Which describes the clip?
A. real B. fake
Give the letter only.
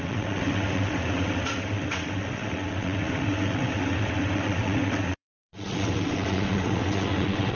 B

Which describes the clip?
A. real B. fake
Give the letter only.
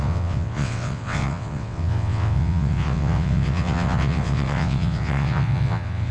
B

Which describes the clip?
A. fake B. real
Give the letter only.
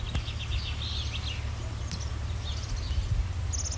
B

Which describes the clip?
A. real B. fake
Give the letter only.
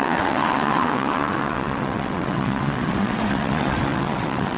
B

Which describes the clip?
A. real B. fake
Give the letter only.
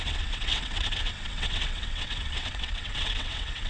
B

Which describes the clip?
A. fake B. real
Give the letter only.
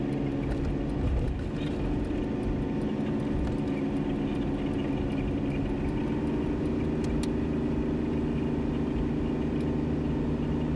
B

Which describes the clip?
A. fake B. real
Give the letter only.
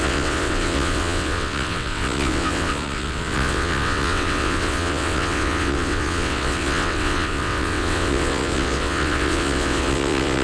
A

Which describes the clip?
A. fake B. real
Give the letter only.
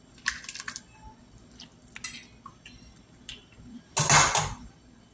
B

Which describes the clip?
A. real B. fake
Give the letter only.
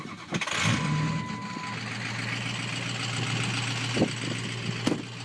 A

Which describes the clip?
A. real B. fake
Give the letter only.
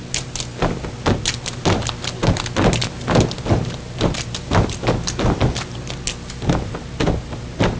A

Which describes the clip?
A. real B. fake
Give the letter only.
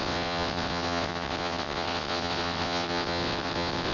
B